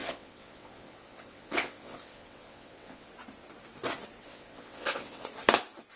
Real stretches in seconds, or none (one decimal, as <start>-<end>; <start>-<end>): 3.1-4.2; 5.3-6.0